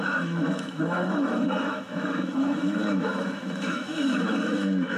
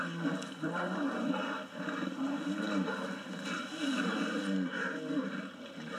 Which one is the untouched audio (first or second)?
second